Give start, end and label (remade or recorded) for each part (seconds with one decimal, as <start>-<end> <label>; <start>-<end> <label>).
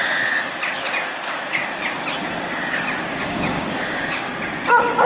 0.0-3.2 recorded; 3.2-4.3 remade; 4.3-5.1 recorded